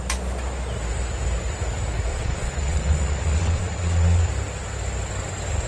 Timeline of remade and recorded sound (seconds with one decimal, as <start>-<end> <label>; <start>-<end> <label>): 0.0-2.1 recorded; 2.1-4.3 remade; 4.3-5.7 recorded